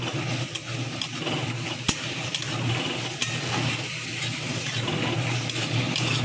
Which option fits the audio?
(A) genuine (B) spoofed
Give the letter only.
A